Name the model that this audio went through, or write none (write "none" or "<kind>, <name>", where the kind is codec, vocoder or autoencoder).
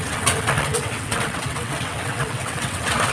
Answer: vocoder, WaveNeXt